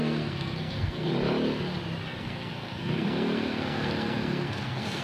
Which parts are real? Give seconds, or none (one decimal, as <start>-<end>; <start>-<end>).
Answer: 1.1-2.2